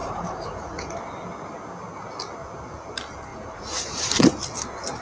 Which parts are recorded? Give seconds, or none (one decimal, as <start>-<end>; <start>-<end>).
1.0-3.3; 4.1-5.0